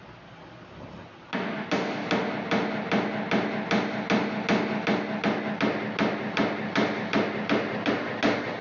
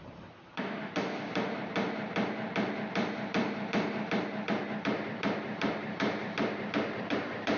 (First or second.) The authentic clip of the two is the first